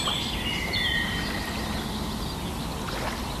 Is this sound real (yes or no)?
yes